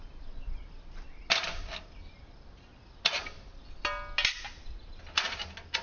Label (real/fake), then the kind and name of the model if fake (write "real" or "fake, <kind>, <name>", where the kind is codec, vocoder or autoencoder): real